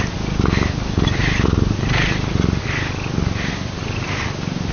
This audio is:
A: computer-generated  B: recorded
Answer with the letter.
B